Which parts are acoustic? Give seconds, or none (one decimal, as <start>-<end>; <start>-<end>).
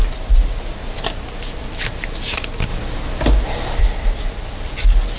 0.0-5.2